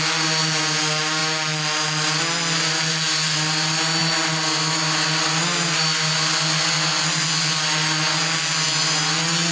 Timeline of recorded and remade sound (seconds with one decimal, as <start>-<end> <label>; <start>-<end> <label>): 0.0-9.5 recorded